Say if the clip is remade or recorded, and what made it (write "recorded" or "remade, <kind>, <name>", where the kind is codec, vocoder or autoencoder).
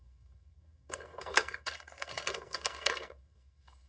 remade, codec, SNAC